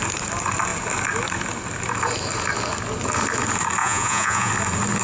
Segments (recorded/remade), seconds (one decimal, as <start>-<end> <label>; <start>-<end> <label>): 0.0-3.8 recorded; 3.8-4.5 remade; 4.5-5.0 recorded